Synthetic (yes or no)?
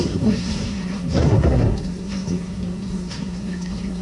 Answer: yes